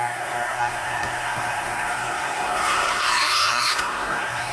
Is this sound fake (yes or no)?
yes